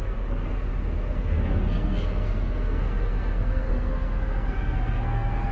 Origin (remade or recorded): remade